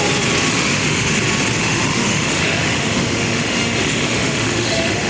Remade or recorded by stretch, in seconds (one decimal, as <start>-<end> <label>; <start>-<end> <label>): 0.0-0.5 recorded; 0.5-1.1 remade; 1.1-1.6 recorded; 1.6-5.1 remade